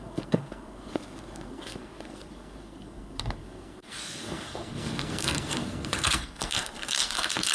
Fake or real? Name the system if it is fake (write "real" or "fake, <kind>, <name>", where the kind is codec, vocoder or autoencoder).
fake, codec, SNAC